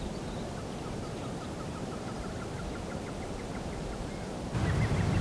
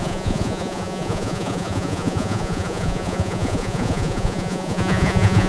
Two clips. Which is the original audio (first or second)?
first